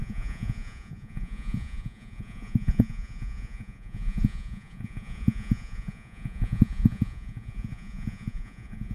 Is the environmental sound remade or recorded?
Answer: remade